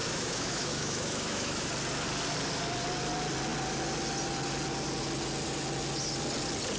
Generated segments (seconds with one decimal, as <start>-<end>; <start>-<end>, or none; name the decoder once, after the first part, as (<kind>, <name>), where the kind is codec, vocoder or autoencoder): 0.0-1.7 (autoencoder, DAC-VAE)